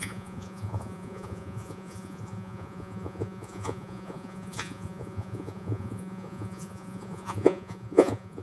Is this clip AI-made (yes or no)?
yes